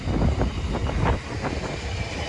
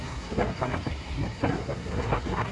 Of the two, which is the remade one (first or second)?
second